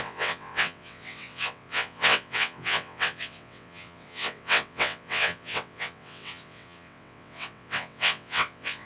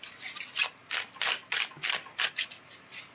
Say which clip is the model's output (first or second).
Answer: first